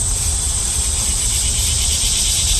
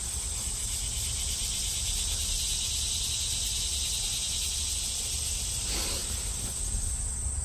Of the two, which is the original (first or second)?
second